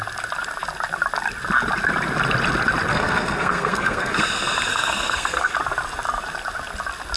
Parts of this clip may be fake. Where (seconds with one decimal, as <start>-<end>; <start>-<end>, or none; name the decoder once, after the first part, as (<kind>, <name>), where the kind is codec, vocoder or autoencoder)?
2.9-4.2 (codec, SNAC); 4.7-5.5